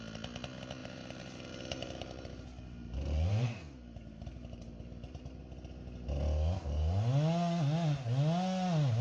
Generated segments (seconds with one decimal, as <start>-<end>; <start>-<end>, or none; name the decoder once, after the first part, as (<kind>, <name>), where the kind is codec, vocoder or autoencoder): 0.8-5.4 (vocoder, BigVGAN v2)